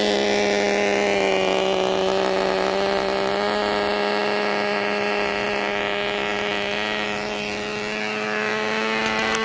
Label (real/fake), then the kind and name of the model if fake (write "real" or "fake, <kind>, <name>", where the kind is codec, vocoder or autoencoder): real